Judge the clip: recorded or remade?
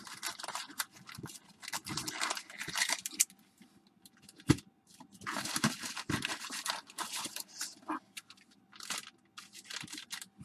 recorded